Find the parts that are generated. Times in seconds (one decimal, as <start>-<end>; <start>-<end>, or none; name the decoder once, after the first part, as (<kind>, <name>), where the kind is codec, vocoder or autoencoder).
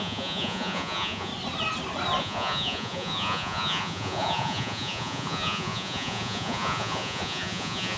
0.0-1.3 (vocoder, Vocos); 2.2-8.0